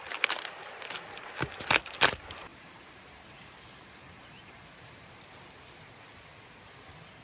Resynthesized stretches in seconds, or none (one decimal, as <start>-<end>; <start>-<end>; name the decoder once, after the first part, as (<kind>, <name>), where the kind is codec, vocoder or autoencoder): 2.5-5.2 (vocoder, BigVGAN v2)